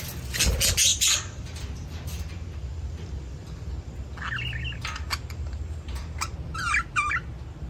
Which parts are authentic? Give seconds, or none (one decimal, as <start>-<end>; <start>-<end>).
0.0-0.9; 3.7-7.7